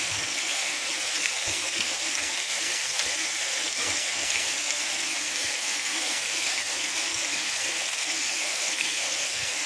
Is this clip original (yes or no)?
no